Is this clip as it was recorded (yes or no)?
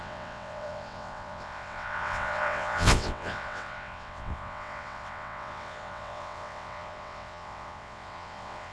no